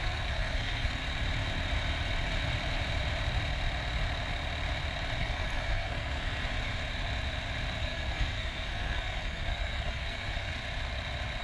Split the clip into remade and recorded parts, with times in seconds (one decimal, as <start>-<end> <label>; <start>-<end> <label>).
0.0-1.0 remade; 1.0-5.2 recorded; 5.2-6.5 remade; 6.5-7.8 recorded; 7.8-10.5 remade; 10.5-11.4 recorded